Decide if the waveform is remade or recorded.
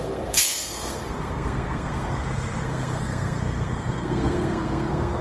remade